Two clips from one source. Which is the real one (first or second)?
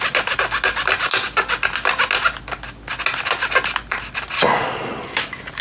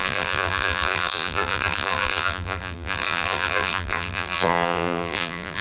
first